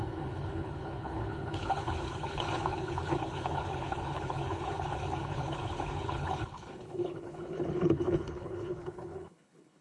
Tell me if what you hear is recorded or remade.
remade